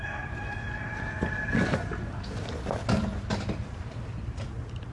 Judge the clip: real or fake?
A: real